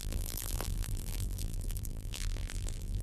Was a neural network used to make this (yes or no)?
yes